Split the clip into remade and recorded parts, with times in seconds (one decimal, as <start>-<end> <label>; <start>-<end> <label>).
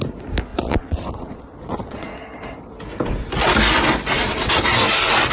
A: 0.0-0.5 recorded; 0.5-2.4 remade; 2.4-5.3 recorded